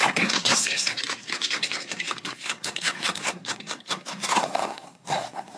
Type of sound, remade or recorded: remade